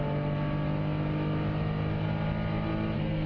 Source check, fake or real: real